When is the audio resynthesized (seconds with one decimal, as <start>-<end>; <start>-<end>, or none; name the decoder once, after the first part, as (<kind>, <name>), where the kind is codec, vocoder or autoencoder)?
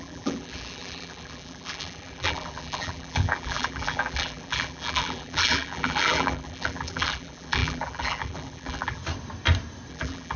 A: 0.0-9.0 (vocoder, BigVGAN v2); 9.9-10.4